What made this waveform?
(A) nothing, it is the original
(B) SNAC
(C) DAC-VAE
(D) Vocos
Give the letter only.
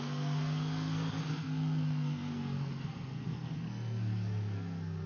B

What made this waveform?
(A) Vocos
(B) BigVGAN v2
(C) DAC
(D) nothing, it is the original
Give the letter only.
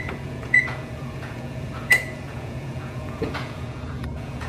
A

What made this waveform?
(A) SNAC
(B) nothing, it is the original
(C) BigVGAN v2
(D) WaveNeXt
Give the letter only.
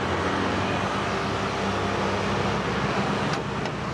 B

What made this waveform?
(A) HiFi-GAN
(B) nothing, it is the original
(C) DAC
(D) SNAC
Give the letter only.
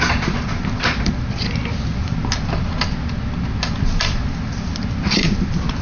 B